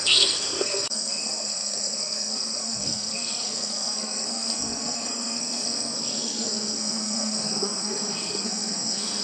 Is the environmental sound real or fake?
fake